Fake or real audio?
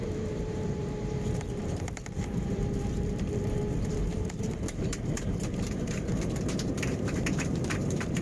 fake